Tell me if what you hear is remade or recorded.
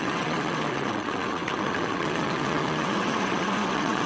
remade